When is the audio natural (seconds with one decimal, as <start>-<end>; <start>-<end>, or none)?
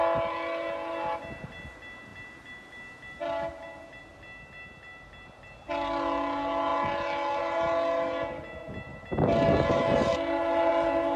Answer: 0.0-11.2